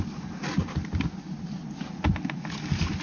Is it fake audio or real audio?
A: real